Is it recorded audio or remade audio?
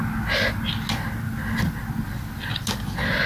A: recorded